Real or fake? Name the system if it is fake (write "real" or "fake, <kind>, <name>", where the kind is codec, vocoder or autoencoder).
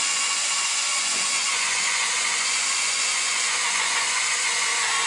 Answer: fake, vocoder, Vocos